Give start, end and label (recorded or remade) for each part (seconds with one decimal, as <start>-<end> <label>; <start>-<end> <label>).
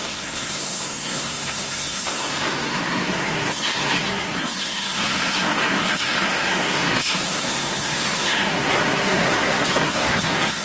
0.0-10.6 remade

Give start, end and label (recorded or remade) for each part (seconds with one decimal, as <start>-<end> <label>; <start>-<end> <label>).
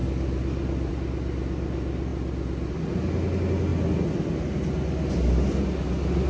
0.0-6.3 recorded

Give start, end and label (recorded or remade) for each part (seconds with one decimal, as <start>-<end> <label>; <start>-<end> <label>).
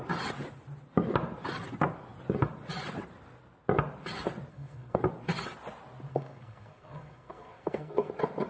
0.0-4.5 recorded; 4.5-5.0 remade; 5.0-6.1 recorded; 6.1-8.1 remade; 8.1-8.5 recorded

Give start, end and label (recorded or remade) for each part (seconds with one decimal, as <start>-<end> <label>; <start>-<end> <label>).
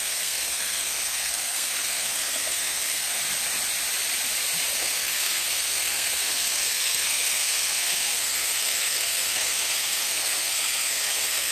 0.0-3.2 remade; 3.2-4.8 recorded; 4.8-11.5 remade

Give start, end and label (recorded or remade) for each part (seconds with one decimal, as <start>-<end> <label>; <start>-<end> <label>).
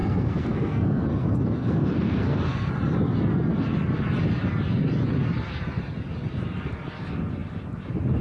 0.0-2.7 remade; 2.7-8.2 recorded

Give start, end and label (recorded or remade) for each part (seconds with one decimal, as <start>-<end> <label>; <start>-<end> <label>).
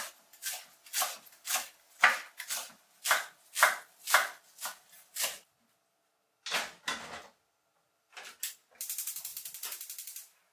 0.0-10.5 recorded